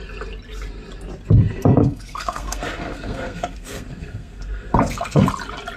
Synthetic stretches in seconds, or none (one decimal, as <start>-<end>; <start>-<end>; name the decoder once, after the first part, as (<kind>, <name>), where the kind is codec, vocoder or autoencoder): 1.8-5.3 (codec, SNAC)